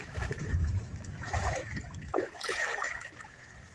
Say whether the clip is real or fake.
fake